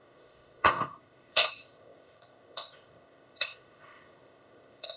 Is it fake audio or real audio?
fake